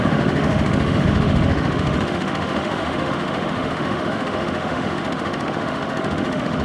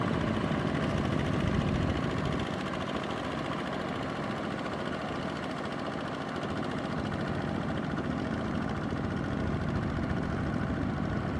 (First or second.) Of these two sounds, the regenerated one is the first